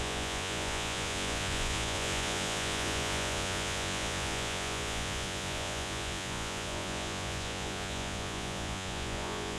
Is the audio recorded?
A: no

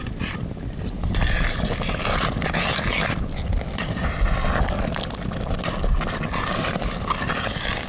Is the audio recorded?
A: yes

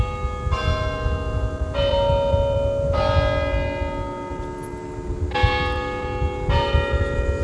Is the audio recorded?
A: yes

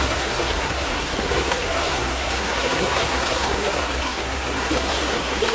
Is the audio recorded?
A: no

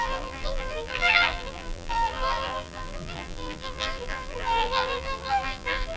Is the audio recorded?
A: no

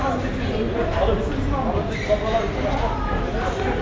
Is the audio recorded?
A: yes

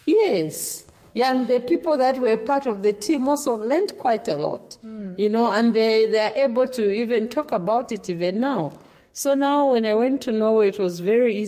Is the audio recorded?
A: no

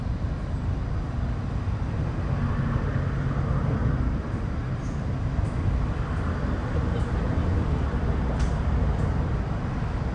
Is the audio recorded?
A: yes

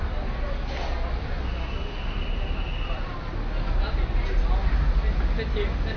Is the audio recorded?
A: yes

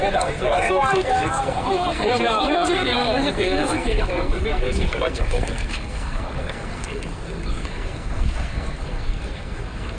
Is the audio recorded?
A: no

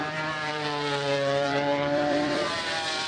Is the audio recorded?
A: no